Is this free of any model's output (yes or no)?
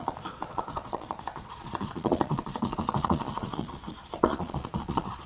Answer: no